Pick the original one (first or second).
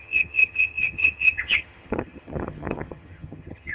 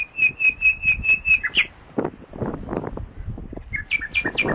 second